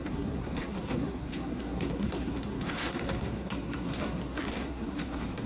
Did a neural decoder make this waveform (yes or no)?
yes